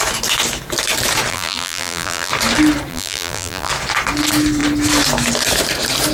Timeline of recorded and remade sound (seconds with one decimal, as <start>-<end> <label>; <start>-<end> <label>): 0.0-1.3 recorded; 1.3-2.3 remade; 2.3-2.9 recorded; 2.9-3.7 remade; 3.7-6.1 recorded